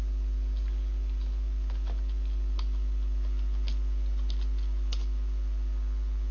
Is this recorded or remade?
recorded